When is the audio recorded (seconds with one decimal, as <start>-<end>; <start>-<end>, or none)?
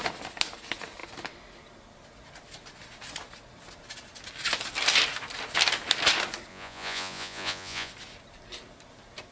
0.0-6.5; 7.9-9.3